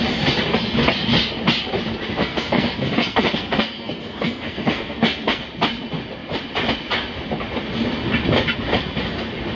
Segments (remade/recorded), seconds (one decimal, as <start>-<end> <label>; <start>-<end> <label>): 0.0-2.2 recorded; 2.2-5.4 remade; 5.4-9.6 recorded